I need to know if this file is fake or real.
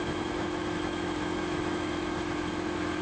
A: fake